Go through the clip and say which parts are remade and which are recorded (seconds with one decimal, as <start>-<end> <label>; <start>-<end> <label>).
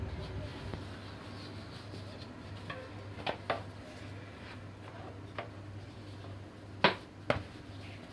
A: 0.0-8.1 recorded